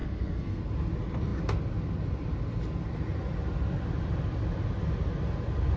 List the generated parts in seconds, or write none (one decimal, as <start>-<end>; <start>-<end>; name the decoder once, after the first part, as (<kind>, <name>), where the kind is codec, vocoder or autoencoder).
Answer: 0.0-0.6 (codec, SNAC)